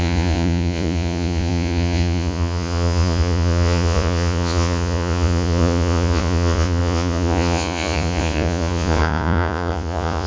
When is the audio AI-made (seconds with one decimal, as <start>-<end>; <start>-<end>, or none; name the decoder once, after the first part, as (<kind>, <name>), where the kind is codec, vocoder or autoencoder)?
0.0-10.3 (vocoder, Vocos)